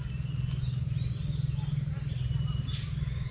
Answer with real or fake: real